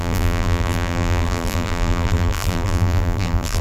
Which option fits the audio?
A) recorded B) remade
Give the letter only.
B